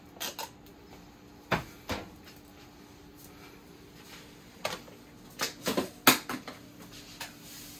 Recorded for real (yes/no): yes